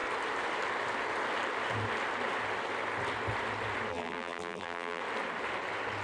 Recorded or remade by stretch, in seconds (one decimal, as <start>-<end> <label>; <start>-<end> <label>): 0.0-3.9 recorded; 3.9-5.0 remade; 5.0-6.0 recorded